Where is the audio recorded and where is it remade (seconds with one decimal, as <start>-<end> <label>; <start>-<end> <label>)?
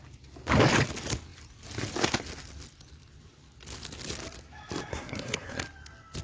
0.0-4.9 recorded; 4.9-5.6 remade; 5.6-6.2 recorded